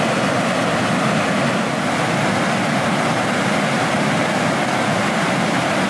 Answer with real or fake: real